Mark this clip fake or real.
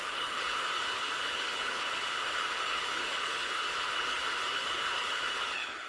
fake